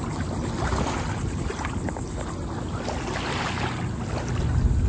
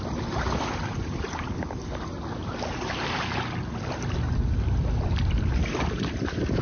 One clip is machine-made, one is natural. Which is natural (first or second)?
first